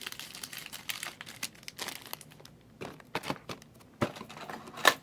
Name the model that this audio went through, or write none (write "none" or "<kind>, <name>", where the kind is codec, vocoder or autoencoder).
none